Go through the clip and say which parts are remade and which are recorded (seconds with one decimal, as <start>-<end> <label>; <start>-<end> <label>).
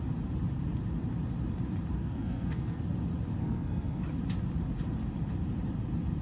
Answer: 0.0-2.0 recorded; 2.0-2.8 remade; 2.8-3.4 recorded; 3.4-4.0 remade; 4.0-6.2 recorded